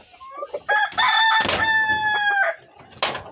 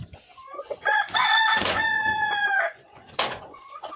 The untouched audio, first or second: first